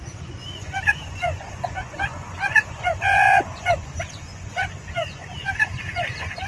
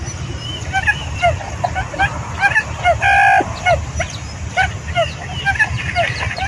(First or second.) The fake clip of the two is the first